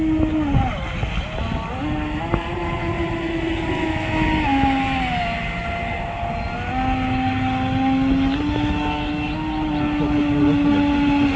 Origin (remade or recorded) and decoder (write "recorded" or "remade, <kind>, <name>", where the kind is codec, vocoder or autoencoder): recorded